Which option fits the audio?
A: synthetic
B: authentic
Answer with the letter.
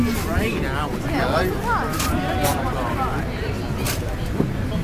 B